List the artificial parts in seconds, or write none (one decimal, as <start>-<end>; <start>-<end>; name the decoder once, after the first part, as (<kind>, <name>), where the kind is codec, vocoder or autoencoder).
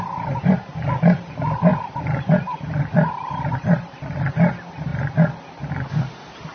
none